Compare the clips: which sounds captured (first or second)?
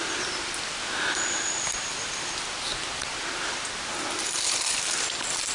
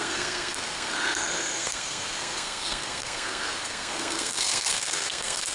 first